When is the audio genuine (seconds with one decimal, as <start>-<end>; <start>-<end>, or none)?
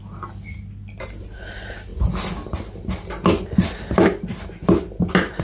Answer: 0.0-5.4